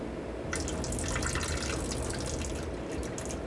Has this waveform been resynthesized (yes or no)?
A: no